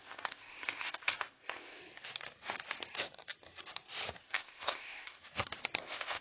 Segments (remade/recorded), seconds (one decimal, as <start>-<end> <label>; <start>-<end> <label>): 0.0-1.8 remade; 1.8-4.2 recorded; 4.2-5.2 remade; 5.2-5.8 recorded; 5.8-6.2 remade